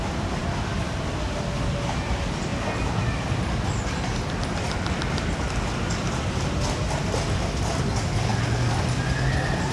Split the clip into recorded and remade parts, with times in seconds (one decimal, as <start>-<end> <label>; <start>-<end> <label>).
0.0-8.3 recorded; 8.3-9.7 remade